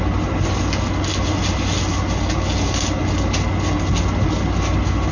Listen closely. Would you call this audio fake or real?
real